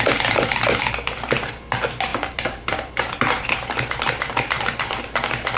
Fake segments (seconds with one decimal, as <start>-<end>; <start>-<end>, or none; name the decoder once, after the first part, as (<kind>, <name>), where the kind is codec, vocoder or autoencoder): 2.1-4.6 (vocoder, BigVGAN v2)